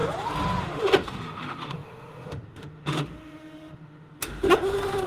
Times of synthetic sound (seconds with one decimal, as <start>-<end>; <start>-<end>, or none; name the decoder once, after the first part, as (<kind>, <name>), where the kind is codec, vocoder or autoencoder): 0.6-5.1 (autoencoder, DAC-VAE)